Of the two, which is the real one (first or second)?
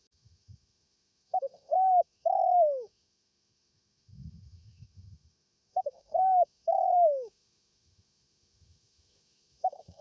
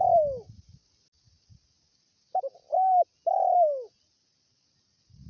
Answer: second